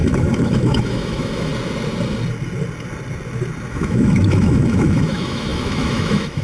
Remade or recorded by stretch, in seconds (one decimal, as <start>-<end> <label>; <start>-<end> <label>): 0.0-1.5 remade; 1.5-3.7 recorded; 3.7-6.4 remade